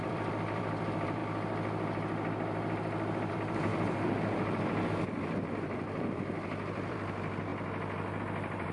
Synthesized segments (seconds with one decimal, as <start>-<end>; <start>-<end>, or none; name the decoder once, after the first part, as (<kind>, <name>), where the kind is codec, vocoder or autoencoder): 0.0-1.2 (vocoder, BigVGAN v2); 3.3-3.7; 4.9-7.5; 8.2-8.7